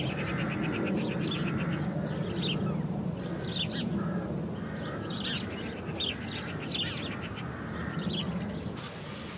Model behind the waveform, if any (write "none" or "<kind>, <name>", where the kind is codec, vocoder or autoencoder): none